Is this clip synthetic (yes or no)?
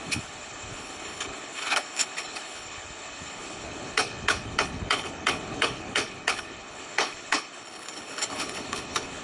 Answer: yes